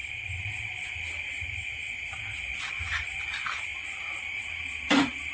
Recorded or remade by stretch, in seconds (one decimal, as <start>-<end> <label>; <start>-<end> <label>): 0.0-5.3 recorded